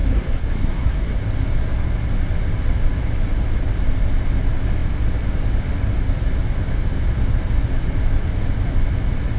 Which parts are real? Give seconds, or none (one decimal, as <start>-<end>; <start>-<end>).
1.2-9.4